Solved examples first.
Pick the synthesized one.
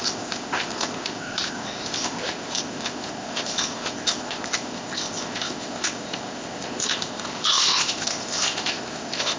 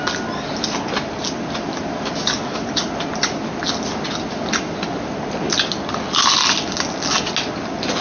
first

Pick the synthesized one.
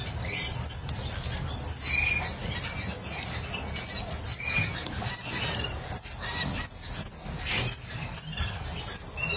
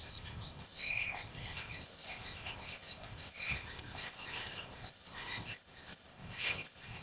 second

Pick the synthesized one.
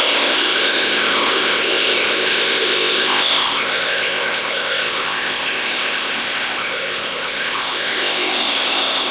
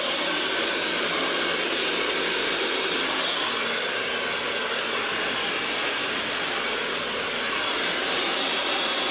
first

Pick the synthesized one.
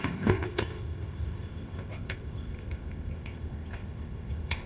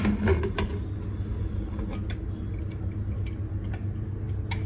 first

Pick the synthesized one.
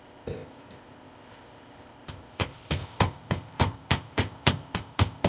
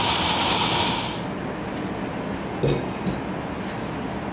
first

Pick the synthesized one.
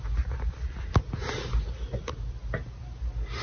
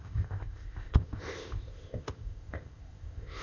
second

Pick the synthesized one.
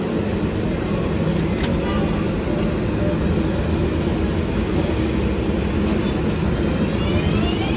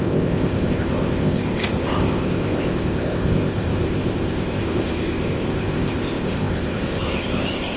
second